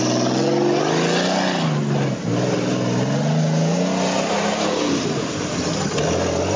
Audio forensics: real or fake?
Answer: real